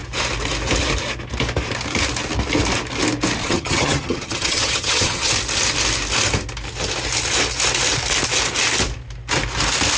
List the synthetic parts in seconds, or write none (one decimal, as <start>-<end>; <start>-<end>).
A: 3.4-5.3